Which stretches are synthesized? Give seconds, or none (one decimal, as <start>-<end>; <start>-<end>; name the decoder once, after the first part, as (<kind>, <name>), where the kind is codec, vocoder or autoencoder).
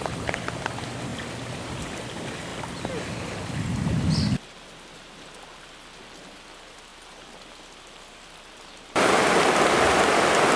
1.1-2.0 (vocoder, BigVGAN v2); 2.5-4.7